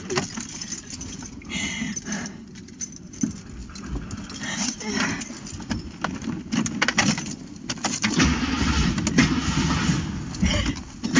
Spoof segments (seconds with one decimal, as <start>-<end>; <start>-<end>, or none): none

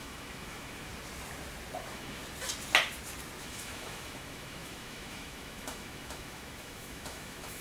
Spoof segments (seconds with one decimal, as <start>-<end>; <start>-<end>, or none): 0.0-0.9; 1.8-2.2; 3.4-7.6

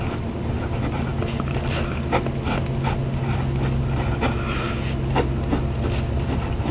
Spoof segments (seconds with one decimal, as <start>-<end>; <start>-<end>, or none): none

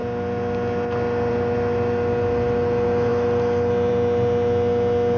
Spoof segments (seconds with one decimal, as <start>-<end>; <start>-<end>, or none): none

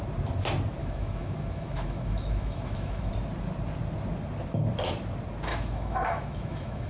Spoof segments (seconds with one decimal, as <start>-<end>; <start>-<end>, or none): 0.8-3.1; 5.5-6.9